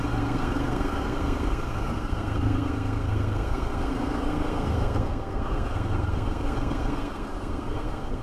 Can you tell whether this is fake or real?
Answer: fake